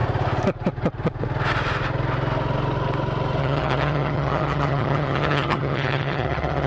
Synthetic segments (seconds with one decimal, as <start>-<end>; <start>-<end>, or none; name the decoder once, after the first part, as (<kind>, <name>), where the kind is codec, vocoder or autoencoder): 3.4-6.7 (vocoder, HiFi-GAN)